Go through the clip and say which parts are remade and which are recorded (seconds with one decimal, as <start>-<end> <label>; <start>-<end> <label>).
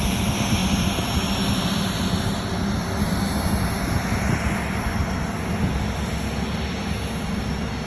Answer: 0.0-7.9 recorded